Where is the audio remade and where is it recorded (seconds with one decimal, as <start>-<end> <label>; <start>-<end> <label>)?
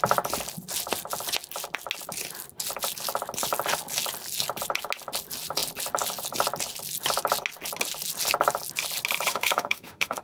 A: 0.0-9.3 recorded; 9.3-10.2 remade